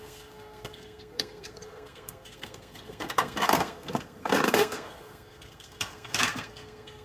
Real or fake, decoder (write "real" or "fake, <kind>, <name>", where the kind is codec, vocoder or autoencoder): fake, codec, SNAC